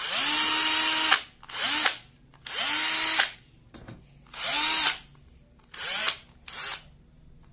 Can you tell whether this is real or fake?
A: real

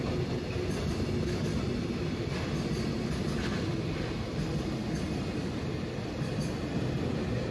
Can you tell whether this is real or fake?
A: real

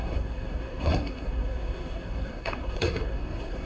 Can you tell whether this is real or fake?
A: fake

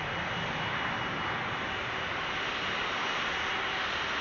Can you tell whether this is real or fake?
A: real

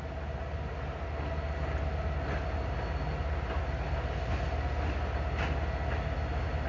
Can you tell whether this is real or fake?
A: real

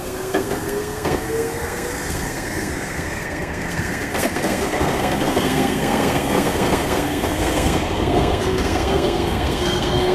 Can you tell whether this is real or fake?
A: fake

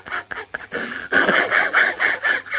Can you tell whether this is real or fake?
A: fake